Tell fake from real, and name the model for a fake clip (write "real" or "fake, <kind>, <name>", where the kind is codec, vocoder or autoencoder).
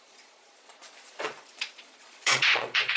fake, vocoder, Vocos